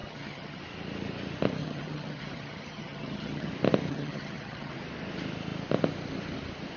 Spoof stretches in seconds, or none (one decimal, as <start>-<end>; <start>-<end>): 0.0-0.6; 1.6-3.5; 3.9-4.7